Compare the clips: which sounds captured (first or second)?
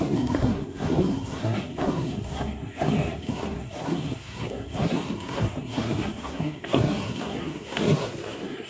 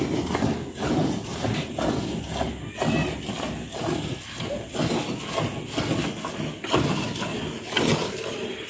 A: second